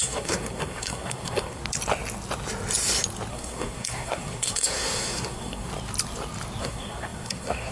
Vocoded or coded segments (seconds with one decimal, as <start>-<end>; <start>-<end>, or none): 0.0-1.6; 3.3-5.7; 6.6-7.7

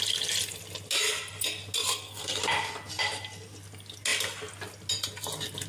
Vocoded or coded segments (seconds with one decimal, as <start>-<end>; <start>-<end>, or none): 1.9-2.4